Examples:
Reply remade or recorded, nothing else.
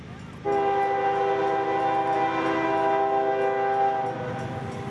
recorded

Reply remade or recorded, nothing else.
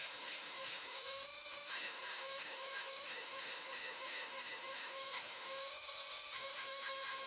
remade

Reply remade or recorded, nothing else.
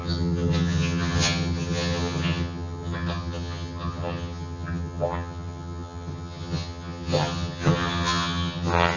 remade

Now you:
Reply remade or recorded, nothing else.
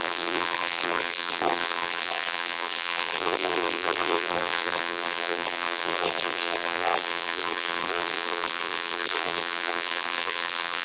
remade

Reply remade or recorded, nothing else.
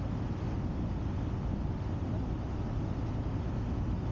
recorded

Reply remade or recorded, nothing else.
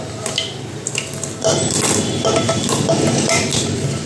recorded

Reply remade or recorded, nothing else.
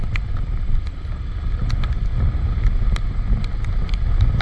recorded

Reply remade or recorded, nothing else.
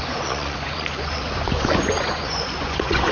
remade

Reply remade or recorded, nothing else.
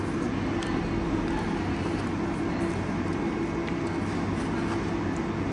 recorded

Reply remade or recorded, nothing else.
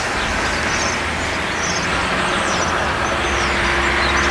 recorded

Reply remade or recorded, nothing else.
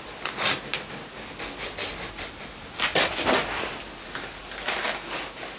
recorded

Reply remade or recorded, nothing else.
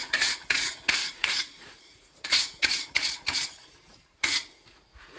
remade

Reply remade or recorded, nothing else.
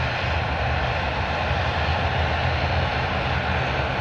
recorded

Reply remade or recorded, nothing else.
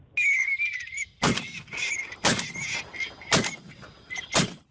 recorded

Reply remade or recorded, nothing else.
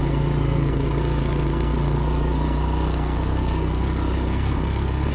remade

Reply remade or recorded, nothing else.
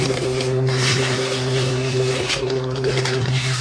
remade